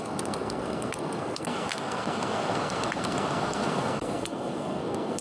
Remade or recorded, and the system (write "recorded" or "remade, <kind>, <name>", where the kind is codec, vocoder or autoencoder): remade, codec, SNAC